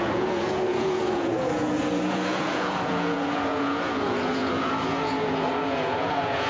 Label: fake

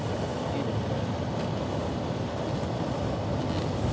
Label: real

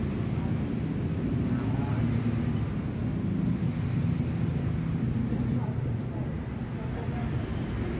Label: real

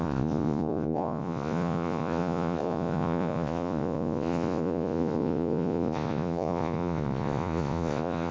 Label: fake